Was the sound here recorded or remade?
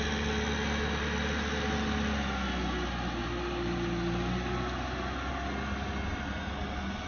recorded